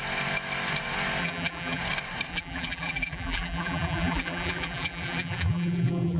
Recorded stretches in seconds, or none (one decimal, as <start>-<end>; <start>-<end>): 0.0-1.2; 1.8-2.3